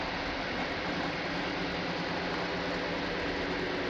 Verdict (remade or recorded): recorded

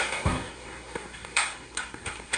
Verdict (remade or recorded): remade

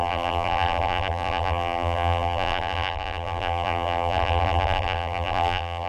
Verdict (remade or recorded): remade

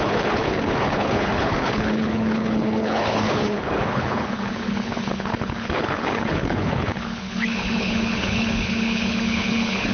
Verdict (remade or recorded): remade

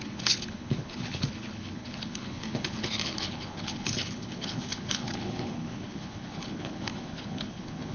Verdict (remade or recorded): remade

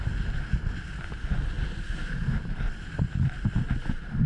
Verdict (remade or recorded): recorded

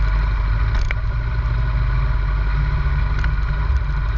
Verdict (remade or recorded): recorded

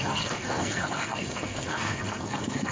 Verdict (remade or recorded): remade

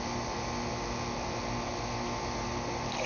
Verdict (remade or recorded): recorded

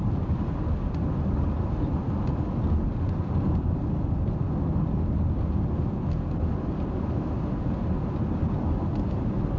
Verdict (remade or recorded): recorded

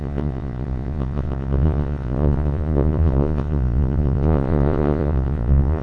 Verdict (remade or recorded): remade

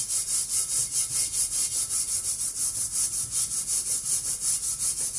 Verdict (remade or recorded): recorded